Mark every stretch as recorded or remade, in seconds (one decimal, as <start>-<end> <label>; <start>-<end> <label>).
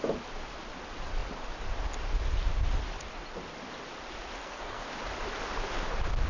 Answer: 0.0-4.4 recorded; 4.4-4.9 remade; 4.9-6.3 recorded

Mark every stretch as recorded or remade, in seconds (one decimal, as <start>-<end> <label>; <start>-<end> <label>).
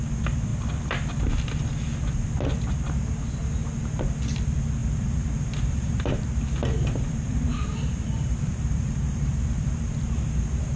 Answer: 0.0-4.8 recorded; 4.8-9.9 remade; 9.9-10.8 recorded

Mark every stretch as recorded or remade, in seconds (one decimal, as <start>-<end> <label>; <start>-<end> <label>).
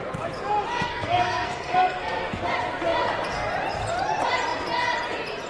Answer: 0.0-0.7 recorded; 0.7-2.4 remade; 2.4-5.5 recorded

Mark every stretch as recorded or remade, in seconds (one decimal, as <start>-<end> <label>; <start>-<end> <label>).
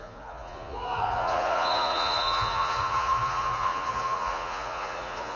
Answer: 0.0-5.4 remade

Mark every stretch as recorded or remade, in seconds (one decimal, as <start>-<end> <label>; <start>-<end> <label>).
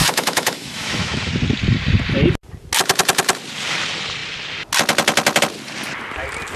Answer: 0.0-1.3 remade; 1.3-6.6 recorded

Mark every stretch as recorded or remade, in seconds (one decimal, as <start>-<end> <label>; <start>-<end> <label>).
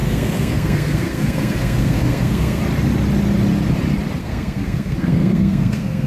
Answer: 0.0-2.6 remade; 2.6-4.2 recorded; 4.2-6.1 remade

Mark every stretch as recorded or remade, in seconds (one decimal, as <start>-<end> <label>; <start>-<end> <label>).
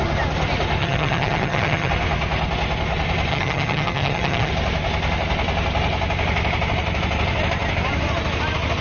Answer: 0.0-0.8 recorded; 0.8-1.9 remade; 1.9-3.3 recorded; 3.3-4.5 remade; 4.5-8.8 recorded